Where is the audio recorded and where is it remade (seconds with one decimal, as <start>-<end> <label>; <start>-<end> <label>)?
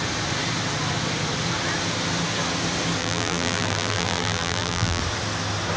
0.0-3.0 recorded; 3.0-5.0 remade; 5.0-5.8 recorded